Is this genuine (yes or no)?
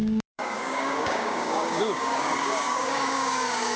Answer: no